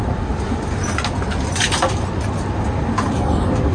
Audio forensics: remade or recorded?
recorded